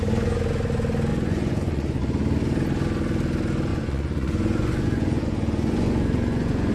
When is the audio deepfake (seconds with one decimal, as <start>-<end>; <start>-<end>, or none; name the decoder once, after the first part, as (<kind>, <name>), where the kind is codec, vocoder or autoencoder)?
1.1-2.0 (vocoder, Vocos); 3.7-6.7